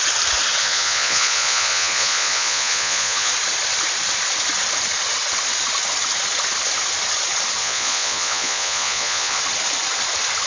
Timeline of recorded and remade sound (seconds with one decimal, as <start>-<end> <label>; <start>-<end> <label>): 0.0-0.6 recorded; 0.6-3.3 remade; 3.3-7.6 recorded; 7.6-9.4 remade; 9.4-10.5 recorded